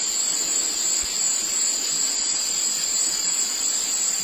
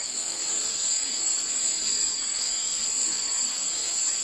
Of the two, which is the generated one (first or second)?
second